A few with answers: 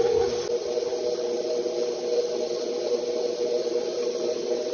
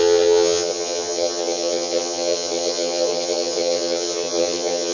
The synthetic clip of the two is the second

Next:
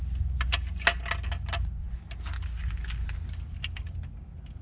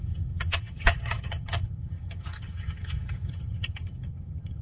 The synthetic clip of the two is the second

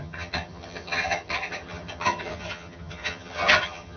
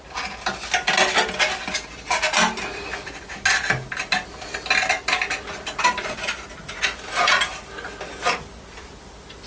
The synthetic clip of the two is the first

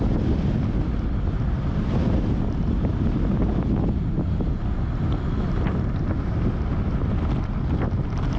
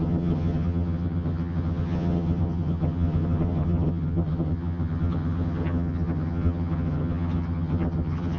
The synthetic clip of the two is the second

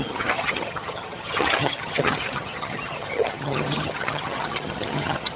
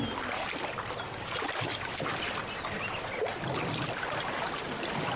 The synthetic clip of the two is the first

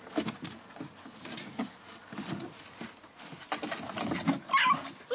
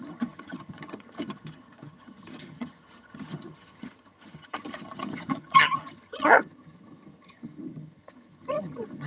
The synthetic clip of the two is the second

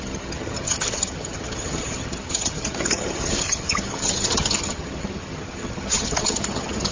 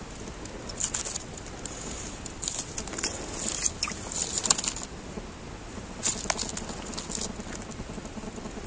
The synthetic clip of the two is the first